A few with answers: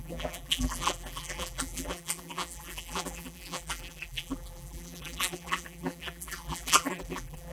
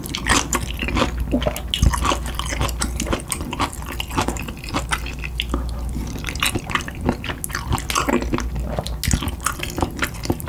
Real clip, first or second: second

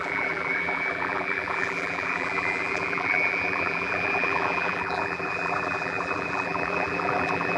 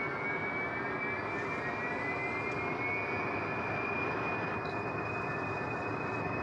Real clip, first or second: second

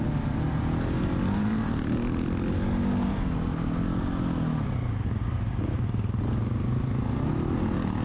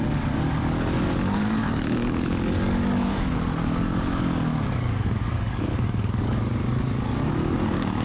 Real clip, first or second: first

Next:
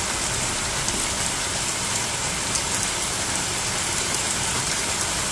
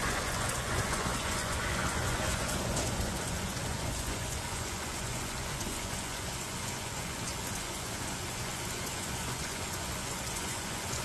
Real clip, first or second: first